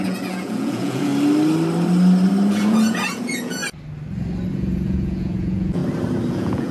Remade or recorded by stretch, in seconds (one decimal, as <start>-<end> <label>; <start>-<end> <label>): 0.0-1.1 remade; 1.1-2.5 recorded; 2.5-3.6 remade; 3.6-4.5 recorded; 4.5-5.8 remade; 5.8-6.3 recorded; 6.3-6.7 remade